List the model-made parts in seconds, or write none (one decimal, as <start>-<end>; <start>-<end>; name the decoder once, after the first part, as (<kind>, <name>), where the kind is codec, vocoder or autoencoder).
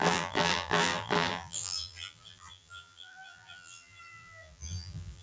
0.0-5.2 (vocoder, BigVGAN v2)